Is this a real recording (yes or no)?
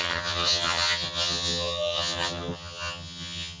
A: no